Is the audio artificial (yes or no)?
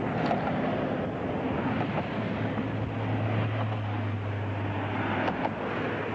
no